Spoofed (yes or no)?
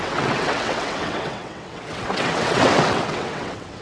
yes